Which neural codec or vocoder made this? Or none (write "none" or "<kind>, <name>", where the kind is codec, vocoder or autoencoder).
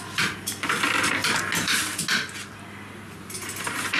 none